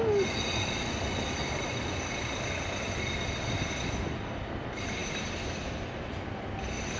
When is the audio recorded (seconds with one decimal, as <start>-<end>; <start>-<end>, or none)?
0.0-7.0